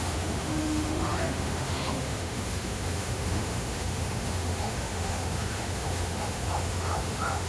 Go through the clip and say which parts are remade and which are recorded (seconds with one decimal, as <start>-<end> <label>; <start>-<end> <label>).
0.0-7.5 remade